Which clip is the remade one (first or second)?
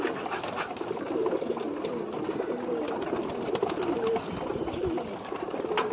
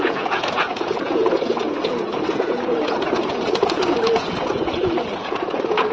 second